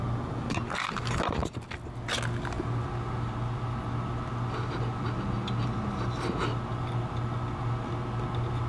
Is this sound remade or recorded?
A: recorded